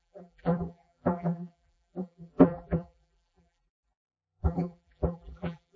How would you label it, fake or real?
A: fake